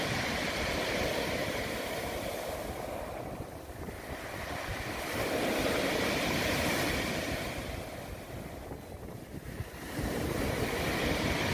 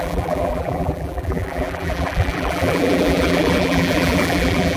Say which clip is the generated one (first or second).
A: second